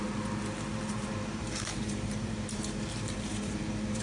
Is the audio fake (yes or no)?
yes